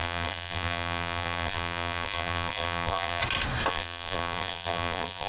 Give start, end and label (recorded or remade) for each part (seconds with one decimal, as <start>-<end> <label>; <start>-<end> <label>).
0.0-3.2 remade; 3.2-3.7 recorded; 3.7-5.3 remade

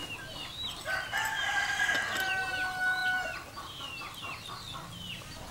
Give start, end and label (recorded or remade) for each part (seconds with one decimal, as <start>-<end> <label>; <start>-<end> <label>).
0.0-5.5 recorded

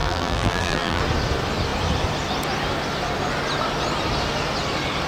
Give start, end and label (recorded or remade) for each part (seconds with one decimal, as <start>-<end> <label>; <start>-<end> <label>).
0.0-1.0 remade; 1.0-5.1 recorded

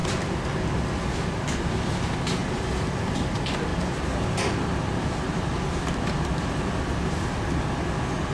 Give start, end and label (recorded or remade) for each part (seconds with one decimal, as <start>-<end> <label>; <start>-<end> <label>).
0.0-0.8 remade; 0.8-3.7 recorded; 3.7-6.8 remade; 6.8-8.3 recorded

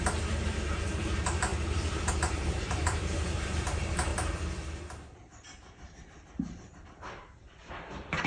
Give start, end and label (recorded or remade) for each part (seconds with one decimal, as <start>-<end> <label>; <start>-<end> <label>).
0.0-4.1 remade; 4.1-6.8 recorded; 6.8-8.3 remade

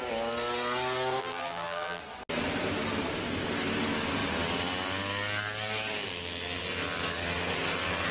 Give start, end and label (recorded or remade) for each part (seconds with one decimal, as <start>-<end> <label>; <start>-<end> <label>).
0.0-1.2 recorded; 1.2-2.0 remade; 2.0-8.1 recorded

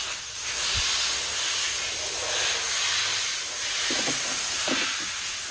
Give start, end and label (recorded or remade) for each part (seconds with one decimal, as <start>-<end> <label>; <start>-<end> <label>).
0.0-5.5 recorded

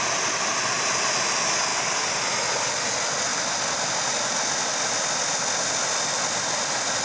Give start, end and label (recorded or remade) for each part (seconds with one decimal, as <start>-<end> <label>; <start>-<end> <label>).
0.0-0.5 recorded; 0.5-1.1 remade; 1.1-1.7 recorded; 1.7-2.2 remade; 2.2-7.0 recorded